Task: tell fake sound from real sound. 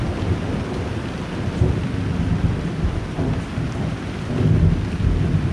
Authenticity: real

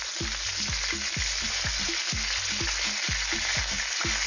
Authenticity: real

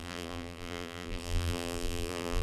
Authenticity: fake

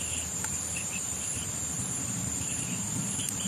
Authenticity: fake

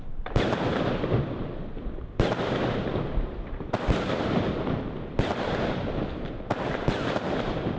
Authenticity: fake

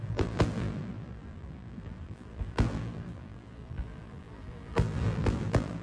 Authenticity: fake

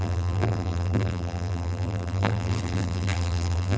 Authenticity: fake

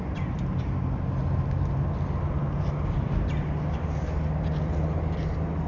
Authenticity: real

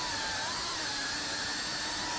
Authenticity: fake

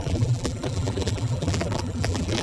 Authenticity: fake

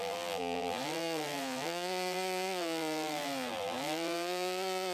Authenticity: fake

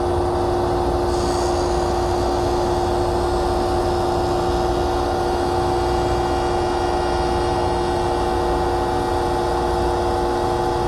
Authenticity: real